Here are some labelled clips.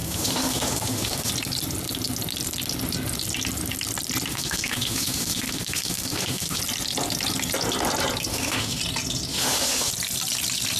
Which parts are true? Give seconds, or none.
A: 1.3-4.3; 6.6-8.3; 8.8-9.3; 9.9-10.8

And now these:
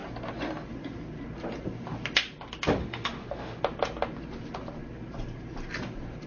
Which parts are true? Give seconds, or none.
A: 0.0-2.8; 3.6-6.3

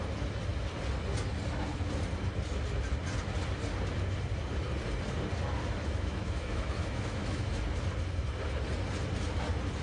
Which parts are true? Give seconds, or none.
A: 0.0-5.8; 7.5-9.8

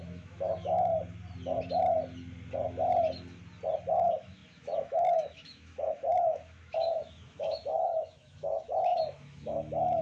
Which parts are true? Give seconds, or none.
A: 0.9-3.9

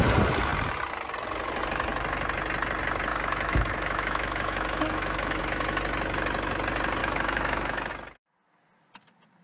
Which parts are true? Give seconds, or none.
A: 0.0-3.1; 5.4-7.0; 7.9-9.4

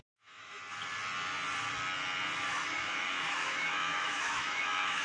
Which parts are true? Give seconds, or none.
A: 0.6-2.5

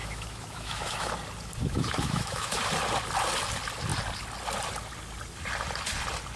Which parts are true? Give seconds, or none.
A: 1.1-1.6; 2.6-6.4